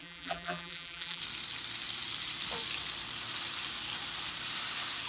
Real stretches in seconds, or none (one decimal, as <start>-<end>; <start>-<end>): 1.2-5.1